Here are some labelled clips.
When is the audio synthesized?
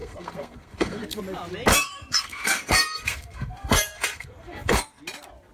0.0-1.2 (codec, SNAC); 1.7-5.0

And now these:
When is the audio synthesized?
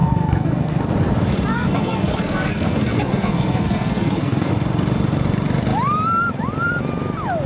0.0-0.8 (codec, SNAC); 1.5-4.5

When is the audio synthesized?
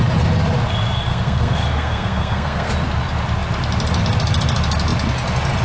1.1-2.7 (codec, SNAC)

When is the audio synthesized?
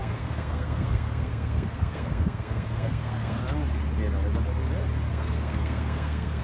0.0-3.4 (codec, SNAC); 5.1-6.4